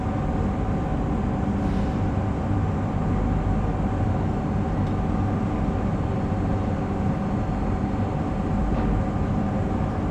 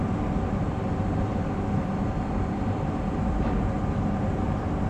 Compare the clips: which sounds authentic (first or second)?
first